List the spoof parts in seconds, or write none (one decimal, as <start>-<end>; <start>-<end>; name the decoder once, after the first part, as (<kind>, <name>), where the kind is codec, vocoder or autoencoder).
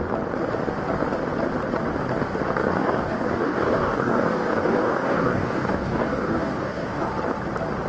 2.6-7.1 (codec, DAC)